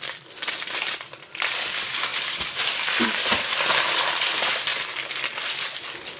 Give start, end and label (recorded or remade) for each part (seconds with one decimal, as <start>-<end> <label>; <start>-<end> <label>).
0.0-2.1 remade; 2.1-2.7 recorded; 2.7-4.7 remade; 4.7-5.6 recorded; 5.6-6.2 remade